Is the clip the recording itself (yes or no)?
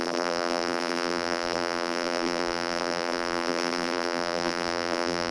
no